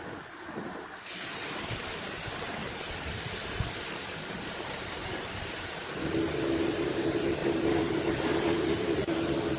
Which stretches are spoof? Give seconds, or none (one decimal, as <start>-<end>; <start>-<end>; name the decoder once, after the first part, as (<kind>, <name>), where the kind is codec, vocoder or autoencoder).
2.6-5.2 (vocoder, BigVGAN v2)